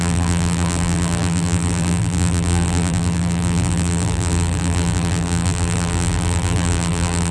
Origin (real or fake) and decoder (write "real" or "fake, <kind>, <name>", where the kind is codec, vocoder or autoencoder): fake, vocoder, BigVGAN v2